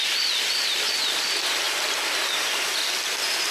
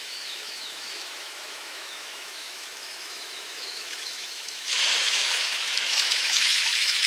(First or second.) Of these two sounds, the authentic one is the first